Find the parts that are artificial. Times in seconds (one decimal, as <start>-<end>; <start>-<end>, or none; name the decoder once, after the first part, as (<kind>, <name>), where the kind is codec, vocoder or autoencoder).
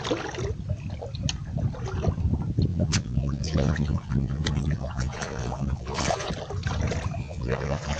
2.7-6.3 (vocoder, Vocos); 7.2-8.0